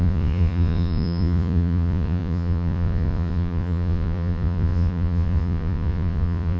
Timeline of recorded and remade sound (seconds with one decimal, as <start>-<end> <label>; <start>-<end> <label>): 0.0-6.6 remade